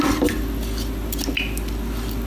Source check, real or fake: real